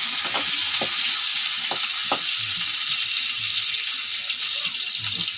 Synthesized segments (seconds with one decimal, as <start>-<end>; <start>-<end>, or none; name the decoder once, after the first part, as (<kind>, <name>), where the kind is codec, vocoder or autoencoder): none